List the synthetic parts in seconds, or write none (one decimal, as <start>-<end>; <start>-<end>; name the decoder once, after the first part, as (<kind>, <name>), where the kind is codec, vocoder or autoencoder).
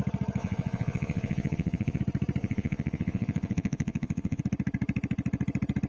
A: 0.4-2.0 (vocoder, Vocos); 2.4-4.4